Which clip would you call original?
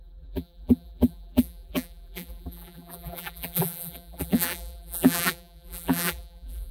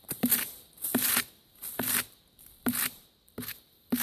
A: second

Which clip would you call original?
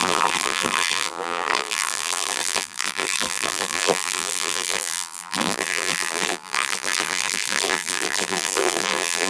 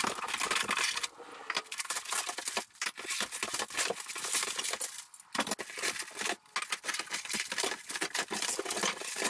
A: second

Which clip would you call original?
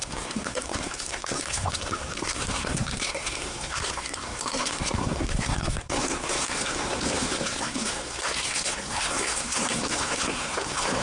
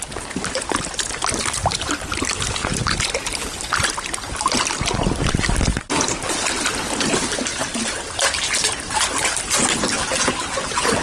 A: second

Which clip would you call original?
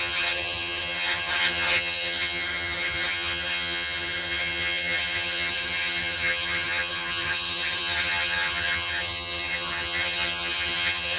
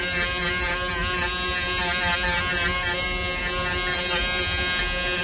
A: second